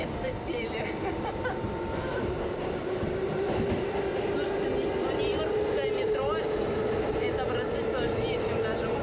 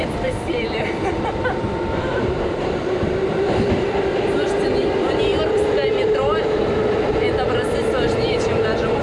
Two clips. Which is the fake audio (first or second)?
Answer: second